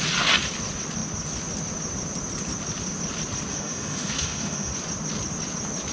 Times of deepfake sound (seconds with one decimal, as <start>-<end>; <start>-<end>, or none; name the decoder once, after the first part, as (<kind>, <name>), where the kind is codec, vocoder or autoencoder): 3.5-4.7 (autoencoder, DAC-VAE)